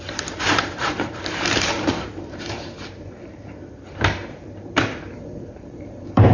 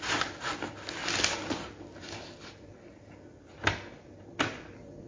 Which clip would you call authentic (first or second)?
second